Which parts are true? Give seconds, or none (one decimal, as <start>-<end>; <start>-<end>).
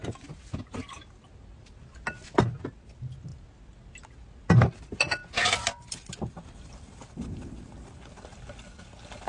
0.0-9.3